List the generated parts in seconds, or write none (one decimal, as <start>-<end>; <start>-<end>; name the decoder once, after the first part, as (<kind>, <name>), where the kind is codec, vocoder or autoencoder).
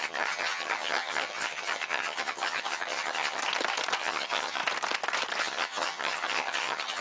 0.0-3.4 (vocoder, HiFi-GAN); 4.0-4.6; 5.4-7.0